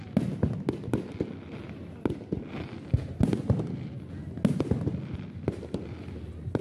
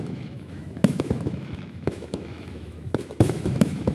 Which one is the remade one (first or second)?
second